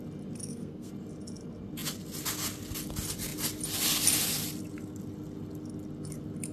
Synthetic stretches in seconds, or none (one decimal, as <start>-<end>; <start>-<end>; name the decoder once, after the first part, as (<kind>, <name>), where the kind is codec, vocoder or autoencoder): 0.4-0.9 (codec, SNAC)